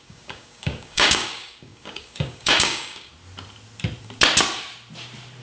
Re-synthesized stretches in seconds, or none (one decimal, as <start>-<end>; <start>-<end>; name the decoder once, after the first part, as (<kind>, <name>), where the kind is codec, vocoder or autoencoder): 0.0-3.1 (codec, DAC)